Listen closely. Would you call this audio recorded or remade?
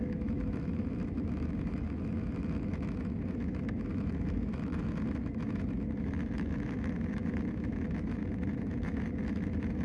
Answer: remade